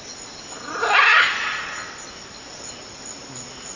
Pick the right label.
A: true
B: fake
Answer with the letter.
A